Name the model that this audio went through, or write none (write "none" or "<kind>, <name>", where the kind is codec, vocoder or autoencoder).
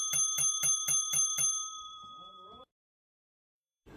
vocoder, BigVGAN v2